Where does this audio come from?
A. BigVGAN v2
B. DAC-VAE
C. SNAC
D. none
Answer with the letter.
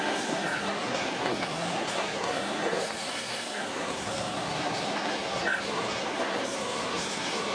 C